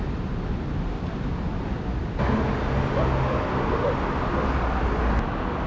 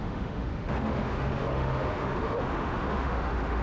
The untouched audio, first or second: first